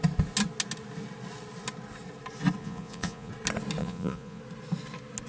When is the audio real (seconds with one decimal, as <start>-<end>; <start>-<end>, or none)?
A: 0.0-2.6; 3.3-3.8; 4.4-5.3